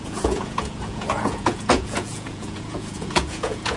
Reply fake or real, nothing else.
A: fake